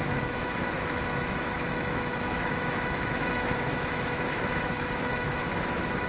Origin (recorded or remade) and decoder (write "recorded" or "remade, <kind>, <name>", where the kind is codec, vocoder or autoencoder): remade, autoencoder, DAC-VAE